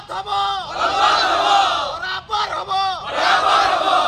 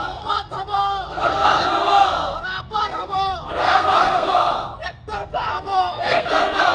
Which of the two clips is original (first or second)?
first